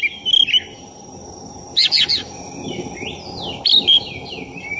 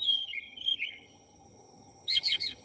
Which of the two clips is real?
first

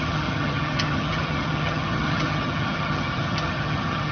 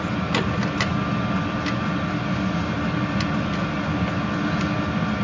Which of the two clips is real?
second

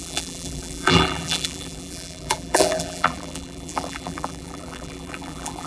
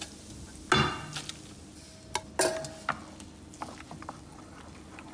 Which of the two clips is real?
second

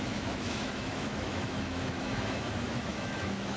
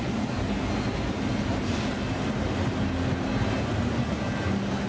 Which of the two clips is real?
second